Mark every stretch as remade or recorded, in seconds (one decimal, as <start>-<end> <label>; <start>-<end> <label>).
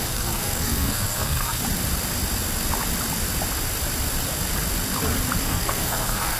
0.0-1.6 remade; 1.6-5.4 recorded; 5.4-6.4 remade